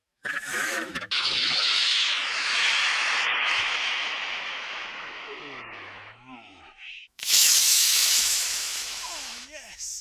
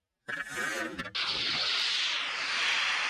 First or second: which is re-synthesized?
first